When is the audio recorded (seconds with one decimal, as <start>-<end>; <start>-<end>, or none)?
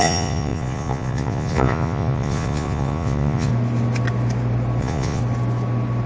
3.5-4.8; 5.2-6.1